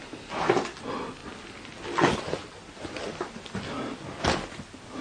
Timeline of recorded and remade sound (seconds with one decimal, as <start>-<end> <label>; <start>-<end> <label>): 0.0-5.0 recorded